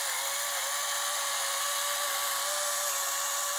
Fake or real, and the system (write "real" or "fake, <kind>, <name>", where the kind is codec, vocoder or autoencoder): real